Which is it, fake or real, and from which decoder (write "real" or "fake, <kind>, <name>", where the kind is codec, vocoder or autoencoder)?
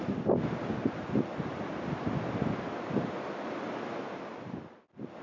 real